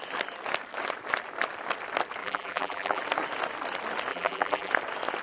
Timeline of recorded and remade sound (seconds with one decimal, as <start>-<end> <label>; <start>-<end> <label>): 0.0-2.2 recorded; 2.2-3.0 remade; 3.0-4.1 recorded; 4.1-4.7 remade; 4.7-5.2 recorded